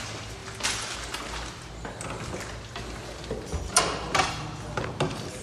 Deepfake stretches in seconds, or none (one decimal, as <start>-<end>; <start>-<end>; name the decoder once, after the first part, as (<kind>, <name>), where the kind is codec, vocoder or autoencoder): none